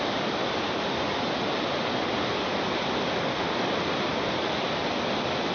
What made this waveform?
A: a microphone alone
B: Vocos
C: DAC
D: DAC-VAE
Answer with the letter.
A